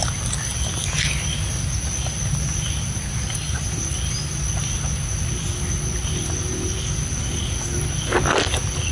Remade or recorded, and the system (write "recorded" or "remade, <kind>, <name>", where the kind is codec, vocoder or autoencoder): recorded